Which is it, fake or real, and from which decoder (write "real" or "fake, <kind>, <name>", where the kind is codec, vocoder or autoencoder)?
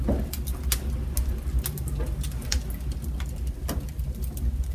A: real